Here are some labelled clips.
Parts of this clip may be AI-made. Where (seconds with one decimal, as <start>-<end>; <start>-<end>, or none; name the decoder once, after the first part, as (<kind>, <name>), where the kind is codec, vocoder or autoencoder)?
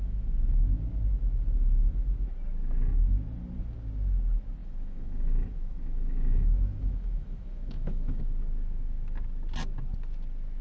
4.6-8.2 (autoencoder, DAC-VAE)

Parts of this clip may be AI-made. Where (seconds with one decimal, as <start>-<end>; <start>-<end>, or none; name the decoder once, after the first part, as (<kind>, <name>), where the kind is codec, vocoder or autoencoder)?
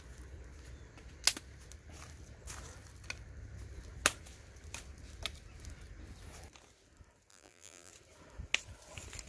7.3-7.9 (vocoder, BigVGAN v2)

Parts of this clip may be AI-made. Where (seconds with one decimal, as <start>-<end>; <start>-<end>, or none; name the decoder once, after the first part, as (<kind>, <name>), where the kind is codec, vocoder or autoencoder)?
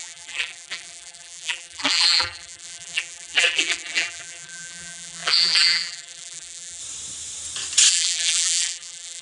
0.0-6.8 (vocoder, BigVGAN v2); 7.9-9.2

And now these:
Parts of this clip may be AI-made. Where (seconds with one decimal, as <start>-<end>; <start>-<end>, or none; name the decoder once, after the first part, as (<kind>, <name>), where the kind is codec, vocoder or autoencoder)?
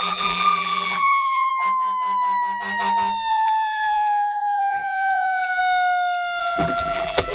0.0-1.5 (vocoder, BigVGAN v2); 3.3-5.6; 6.4-7.3